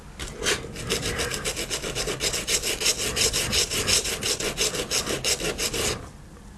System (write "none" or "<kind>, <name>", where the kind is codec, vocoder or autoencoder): none